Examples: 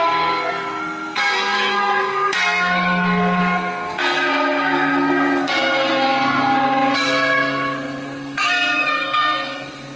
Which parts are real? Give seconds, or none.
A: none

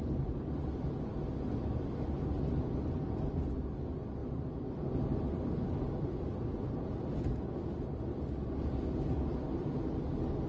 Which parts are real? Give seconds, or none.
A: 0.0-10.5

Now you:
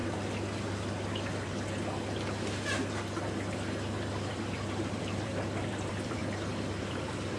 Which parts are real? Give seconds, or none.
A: 0.0-4.1; 6.2-6.8

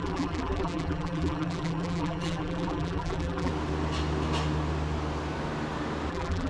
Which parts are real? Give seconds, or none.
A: 3.5-6.1